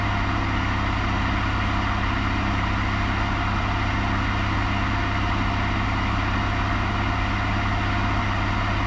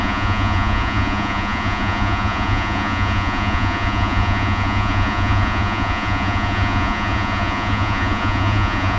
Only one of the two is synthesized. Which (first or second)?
second